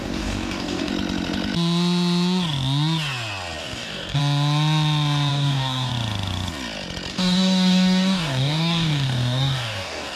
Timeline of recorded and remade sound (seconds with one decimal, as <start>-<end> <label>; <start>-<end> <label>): 0.0-0.9 remade; 0.9-3.6 recorded; 3.6-4.2 remade; 4.2-5.3 recorded; 5.3-5.9 remade; 5.9-7.1 recorded; 7.1-10.2 remade